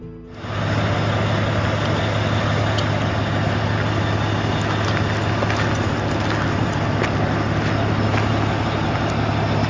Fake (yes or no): no